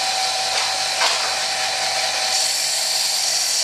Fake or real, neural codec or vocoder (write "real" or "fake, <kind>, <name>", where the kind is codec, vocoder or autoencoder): real